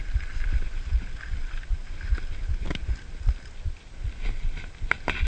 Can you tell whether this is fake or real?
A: real